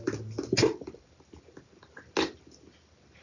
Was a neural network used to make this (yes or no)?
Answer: no